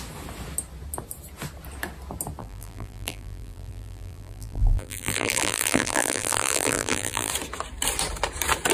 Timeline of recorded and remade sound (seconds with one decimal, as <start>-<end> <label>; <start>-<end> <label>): 0.0-2.4 recorded; 2.4-7.3 remade; 7.3-8.7 recorded